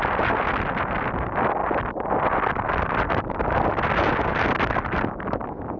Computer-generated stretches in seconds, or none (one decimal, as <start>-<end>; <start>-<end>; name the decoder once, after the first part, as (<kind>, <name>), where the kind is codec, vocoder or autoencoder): none